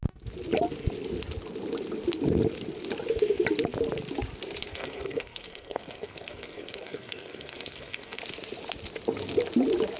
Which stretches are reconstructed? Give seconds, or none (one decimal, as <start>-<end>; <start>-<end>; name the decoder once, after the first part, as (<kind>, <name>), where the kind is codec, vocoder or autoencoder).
4.7-8.2 (codec, SNAC)